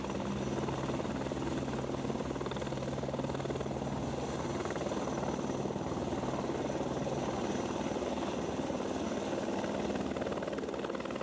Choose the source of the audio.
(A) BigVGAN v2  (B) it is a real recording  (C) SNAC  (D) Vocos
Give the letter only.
B